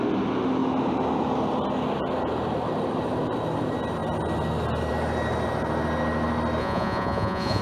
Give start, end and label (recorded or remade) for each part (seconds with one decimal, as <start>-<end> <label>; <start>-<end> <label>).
0.0-6.6 recorded; 6.6-7.6 remade